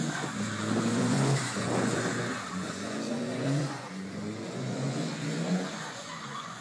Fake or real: fake